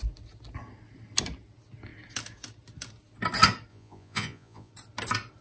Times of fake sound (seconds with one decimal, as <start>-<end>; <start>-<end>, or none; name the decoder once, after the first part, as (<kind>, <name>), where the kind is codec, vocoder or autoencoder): 3.7-4.7 (vocoder, Vocos)